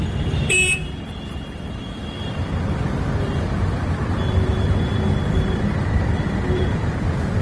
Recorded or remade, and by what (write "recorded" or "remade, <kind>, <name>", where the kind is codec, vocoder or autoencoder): remade, vocoder, BigVGAN v2